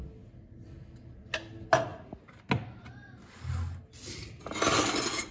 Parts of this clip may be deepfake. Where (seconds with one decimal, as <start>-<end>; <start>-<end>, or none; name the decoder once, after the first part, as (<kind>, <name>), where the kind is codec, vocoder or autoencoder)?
none